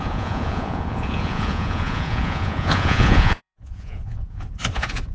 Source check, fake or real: fake